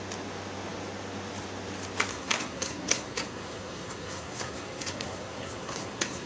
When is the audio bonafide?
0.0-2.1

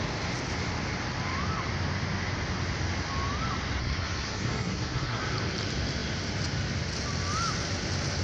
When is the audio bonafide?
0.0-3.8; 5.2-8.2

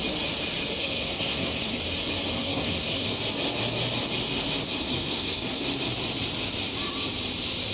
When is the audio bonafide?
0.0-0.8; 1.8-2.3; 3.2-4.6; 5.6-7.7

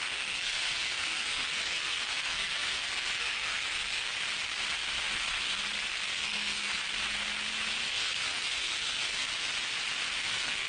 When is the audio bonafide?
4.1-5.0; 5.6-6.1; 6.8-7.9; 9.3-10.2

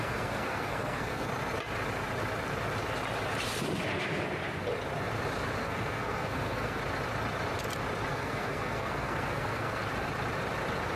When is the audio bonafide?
1.3-5.6; 6.8-8.1; 9.8-11.0

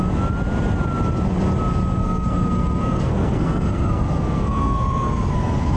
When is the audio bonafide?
0.0-2.0